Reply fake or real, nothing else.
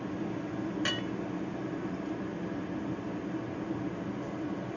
real